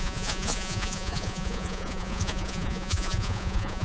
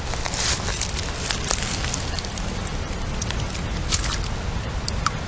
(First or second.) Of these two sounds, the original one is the second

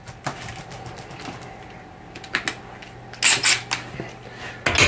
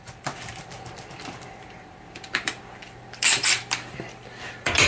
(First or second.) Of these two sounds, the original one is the first